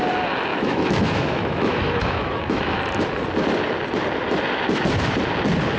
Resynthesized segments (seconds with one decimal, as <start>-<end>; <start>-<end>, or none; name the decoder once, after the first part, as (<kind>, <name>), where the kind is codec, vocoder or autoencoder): 0.5-2.8 (autoencoder, DAC-VAE)